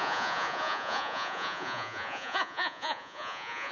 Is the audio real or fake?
fake